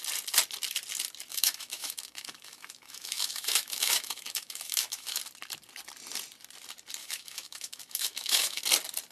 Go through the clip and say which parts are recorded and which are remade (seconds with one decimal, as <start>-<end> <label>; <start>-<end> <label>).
0.0-1.3 recorded; 1.3-5.2 remade; 5.2-7.0 recorded; 7.0-8.6 remade; 8.6-9.1 recorded